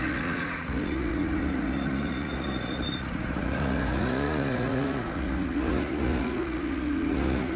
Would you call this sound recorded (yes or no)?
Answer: no